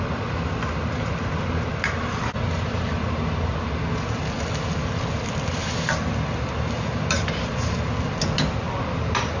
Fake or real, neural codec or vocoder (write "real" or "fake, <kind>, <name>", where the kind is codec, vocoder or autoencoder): real